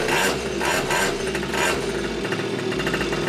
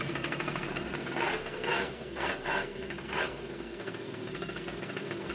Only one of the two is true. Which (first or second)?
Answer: first